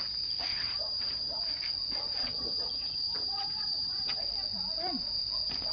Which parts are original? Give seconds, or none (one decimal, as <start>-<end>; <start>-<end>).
0.0-0.5; 1.4-2.2; 4.2-5.7